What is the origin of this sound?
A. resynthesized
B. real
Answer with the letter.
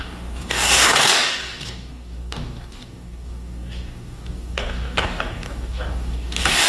A